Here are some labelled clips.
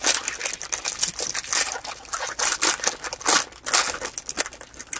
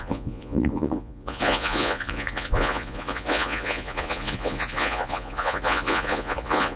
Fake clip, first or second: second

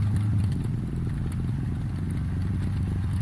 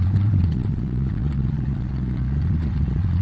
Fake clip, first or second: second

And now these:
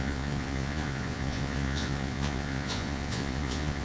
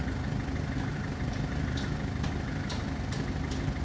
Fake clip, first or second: first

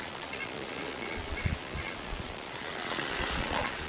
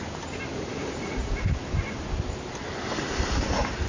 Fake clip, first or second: first